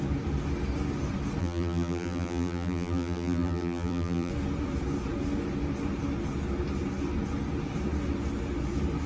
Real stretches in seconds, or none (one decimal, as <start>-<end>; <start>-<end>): 0.0-1.4; 4.3-9.1